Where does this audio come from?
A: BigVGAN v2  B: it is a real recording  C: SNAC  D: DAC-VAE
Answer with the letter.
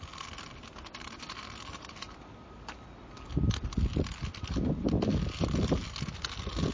B